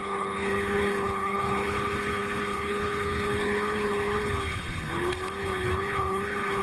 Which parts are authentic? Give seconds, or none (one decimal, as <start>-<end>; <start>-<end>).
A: none